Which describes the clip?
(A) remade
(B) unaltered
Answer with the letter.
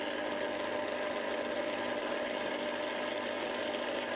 B